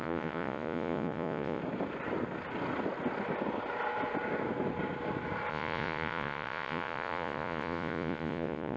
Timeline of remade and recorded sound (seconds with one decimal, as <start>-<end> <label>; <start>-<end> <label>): 0.0-1.6 remade; 1.6-5.5 recorded; 5.5-8.8 remade

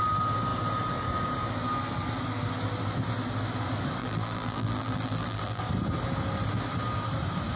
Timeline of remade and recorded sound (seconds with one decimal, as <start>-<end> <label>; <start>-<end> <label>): 0.0-4.0 recorded; 4.0-5.6 remade; 5.6-7.6 recorded

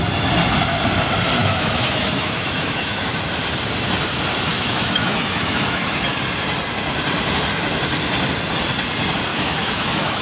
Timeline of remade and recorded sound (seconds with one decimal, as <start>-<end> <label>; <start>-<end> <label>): 0.0-1.4 recorded; 1.4-3.1 remade; 3.1-4.5 recorded; 4.5-6.1 remade; 6.1-9.3 recorded; 9.3-10.2 remade

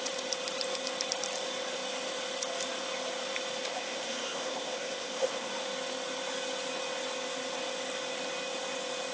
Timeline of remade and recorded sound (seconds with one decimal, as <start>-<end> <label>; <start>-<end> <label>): 0.0-3.7 recorded; 3.7-5.5 remade; 5.5-9.1 recorded

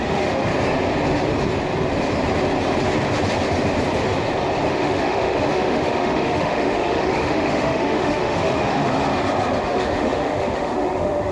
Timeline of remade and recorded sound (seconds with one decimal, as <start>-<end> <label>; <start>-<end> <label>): 0.0-0.5 remade; 0.5-4.7 recorded; 4.7-8.9 remade; 8.9-9.6 recorded; 9.6-11.3 remade

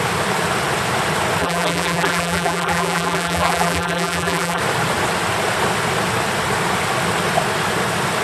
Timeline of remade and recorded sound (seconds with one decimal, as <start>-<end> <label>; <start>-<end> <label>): 0.0-1.4 recorded; 1.4-4.6 remade; 4.6-8.2 recorded

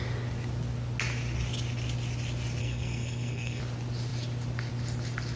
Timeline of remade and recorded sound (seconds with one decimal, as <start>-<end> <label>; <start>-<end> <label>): 0.0-2.6 recorded; 2.6-3.6 remade; 3.6-5.4 recorded

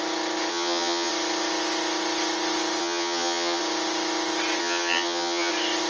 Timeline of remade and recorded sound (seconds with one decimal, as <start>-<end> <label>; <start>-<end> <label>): 0.0-0.5 recorded; 0.5-1.1 remade; 1.1-2.8 recorded; 2.8-3.6 remade; 3.6-4.6 recorded; 4.6-5.5 remade; 5.5-5.9 recorded